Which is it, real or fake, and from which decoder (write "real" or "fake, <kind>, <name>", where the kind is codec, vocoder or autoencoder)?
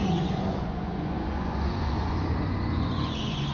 fake, vocoder, Vocos